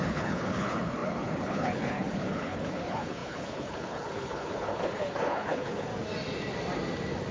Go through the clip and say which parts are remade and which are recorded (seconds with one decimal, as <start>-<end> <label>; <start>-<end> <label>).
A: 0.0-5.9 remade; 5.9-7.3 recorded